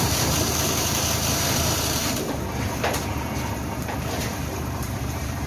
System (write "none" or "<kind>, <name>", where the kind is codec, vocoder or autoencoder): vocoder, BigVGAN v2